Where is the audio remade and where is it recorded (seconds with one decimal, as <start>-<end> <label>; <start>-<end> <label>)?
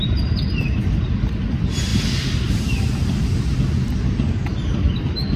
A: 0.0-5.4 recorded